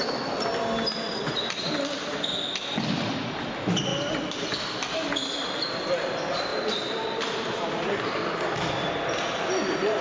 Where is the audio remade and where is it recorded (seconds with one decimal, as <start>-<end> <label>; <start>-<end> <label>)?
0.0-6.5 recorded; 6.5-7.9 remade; 7.9-10.0 recorded